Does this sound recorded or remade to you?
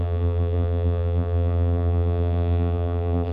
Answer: remade